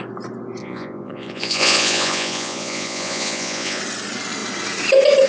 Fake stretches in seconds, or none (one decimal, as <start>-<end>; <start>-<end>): 0.6-3.8